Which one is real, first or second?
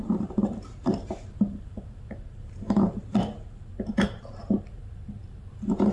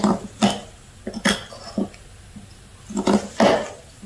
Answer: second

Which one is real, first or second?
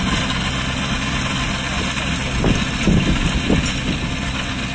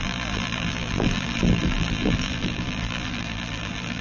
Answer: first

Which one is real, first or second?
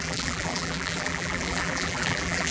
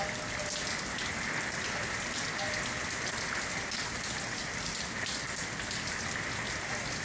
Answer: second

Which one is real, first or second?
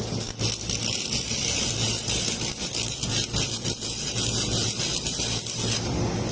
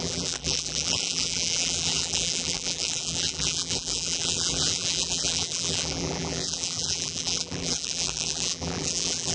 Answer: first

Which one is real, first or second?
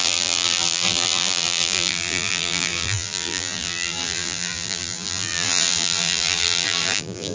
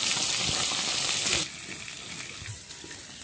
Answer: second